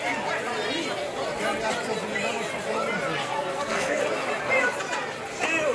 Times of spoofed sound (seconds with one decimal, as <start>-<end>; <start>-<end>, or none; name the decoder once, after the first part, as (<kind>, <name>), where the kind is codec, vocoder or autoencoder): 3.2-4.0 (codec, SNAC)